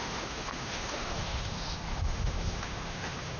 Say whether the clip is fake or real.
fake